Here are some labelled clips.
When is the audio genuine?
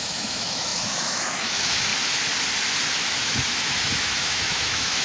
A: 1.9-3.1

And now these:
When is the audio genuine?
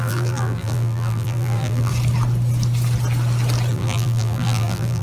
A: 1.9-3.7